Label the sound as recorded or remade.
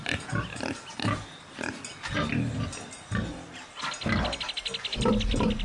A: recorded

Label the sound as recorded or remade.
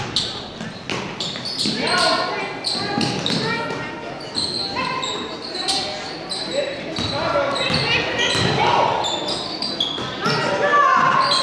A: recorded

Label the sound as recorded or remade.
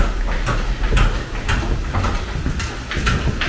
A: recorded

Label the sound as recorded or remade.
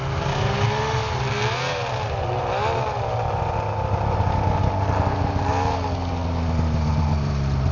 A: recorded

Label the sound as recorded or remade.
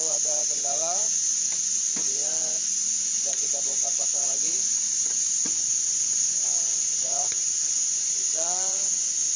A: remade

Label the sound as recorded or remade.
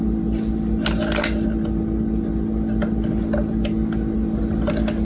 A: recorded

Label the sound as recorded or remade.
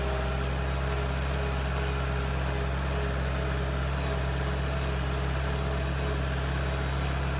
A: recorded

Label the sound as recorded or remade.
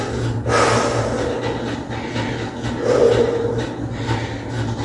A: recorded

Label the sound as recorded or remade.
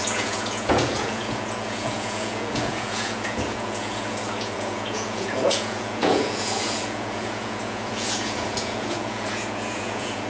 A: remade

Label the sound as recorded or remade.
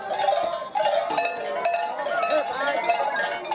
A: recorded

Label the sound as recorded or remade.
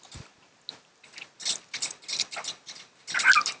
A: recorded